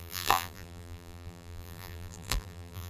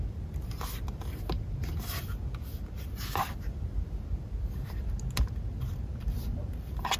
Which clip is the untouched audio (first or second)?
second